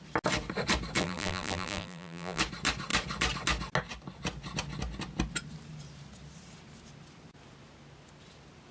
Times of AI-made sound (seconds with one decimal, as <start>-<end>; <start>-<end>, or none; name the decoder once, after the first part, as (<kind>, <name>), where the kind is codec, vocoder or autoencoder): 1.0-2.4 (vocoder, BigVGAN v2)